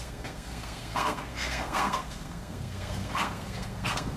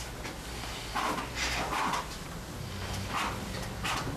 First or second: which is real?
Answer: second